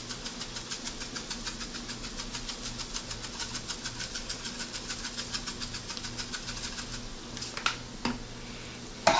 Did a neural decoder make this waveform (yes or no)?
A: no